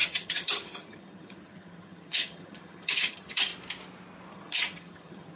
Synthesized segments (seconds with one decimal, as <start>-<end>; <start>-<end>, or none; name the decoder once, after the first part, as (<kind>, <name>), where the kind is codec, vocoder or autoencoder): 0.0-3.5 (vocoder, HiFi-GAN); 4.3-5.4